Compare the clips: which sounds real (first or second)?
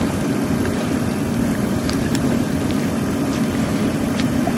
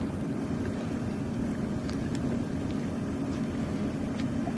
second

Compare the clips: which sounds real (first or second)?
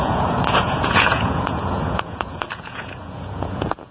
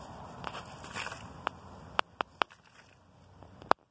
second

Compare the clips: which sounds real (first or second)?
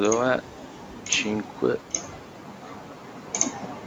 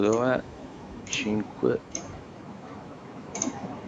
first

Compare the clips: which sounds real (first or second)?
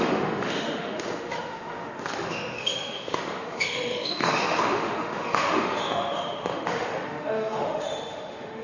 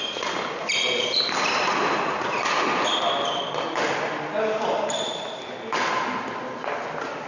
second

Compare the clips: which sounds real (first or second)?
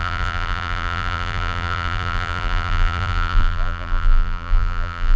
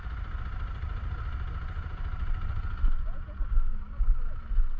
second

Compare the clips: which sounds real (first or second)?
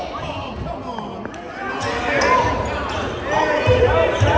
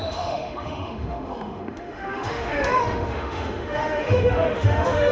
first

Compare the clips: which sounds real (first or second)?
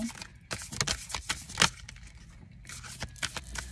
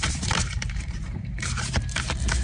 first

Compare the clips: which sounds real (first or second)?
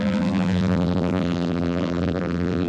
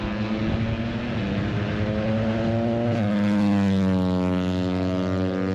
second